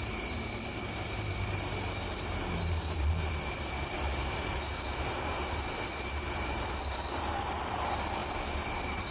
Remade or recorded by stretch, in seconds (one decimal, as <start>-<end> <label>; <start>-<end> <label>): 0.0-8.2 remade; 8.2-9.1 recorded